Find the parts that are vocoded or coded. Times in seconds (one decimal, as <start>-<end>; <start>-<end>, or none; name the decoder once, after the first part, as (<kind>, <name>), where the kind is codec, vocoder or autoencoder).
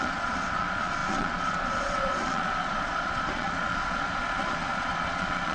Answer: 0.0-5.5 (vocoder, Vocos)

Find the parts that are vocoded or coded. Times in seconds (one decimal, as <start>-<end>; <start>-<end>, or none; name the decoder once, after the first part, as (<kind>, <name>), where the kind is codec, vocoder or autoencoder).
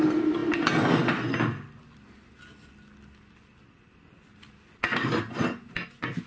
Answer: none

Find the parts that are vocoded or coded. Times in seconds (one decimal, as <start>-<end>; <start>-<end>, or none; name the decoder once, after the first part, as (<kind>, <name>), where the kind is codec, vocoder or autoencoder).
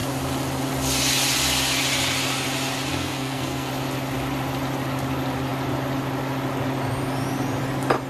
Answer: 2.9-3.7 (codec, SNAC)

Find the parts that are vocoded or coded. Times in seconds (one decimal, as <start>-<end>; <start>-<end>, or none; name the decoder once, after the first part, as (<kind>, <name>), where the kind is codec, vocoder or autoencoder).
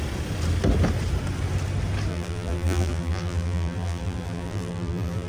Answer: 2.1-5.3 (vocoder, BigVGAN v2)